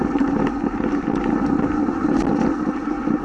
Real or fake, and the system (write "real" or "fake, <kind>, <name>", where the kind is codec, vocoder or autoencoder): real